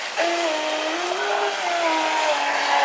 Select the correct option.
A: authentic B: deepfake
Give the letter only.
A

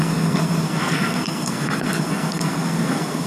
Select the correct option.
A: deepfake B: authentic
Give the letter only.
A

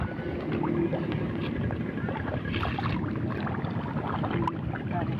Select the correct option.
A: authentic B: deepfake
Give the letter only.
A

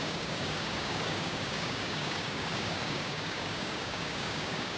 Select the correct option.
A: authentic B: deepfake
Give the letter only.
B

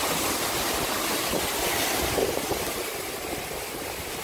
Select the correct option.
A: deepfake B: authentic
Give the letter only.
B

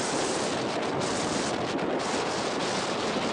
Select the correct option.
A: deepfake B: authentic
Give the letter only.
B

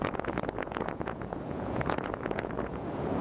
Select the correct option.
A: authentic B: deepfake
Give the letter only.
B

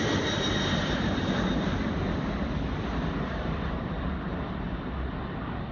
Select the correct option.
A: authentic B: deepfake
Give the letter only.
A